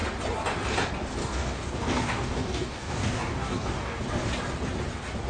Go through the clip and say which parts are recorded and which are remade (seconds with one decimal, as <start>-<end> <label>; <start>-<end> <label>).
0.0-1.2 recorded; 1.2-4.0 remade; 4.0-5.3 recorded

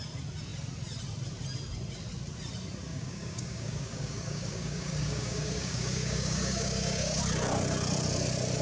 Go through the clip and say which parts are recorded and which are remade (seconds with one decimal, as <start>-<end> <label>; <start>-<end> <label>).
0.0-2.9 recorded; 2.9-7.2 remade; 7.2-8.6 recorded

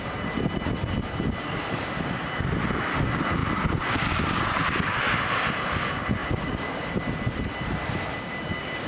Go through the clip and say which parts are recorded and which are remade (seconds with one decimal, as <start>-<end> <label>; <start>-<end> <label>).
0.0-6.2 recorded; 6.2-6.9 remade; 6.9-8.9 recorded

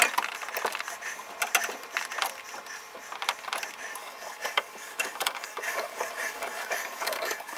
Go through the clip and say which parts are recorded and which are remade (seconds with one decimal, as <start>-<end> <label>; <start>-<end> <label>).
0.0-4.0 recorded; 4.0-7.6 remade

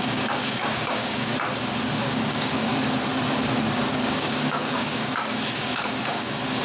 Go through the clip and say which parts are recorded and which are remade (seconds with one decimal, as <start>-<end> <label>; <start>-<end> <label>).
0.0-1.3 remade; 1.3-2.0 recorded; 2.0-2.7 remade; 2.7-3.9 recorded; 3.9-6.6 remade

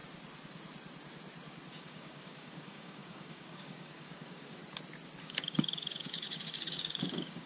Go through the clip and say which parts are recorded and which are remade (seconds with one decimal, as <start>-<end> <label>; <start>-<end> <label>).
0.0-1.7 recorded; 1.7-4.6 remade; 4.6-5.2 recorded; 5.2-7.5 remade

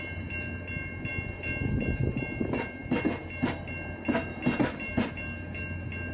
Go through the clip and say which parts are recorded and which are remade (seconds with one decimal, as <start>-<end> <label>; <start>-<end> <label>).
0.0-6.1 recorded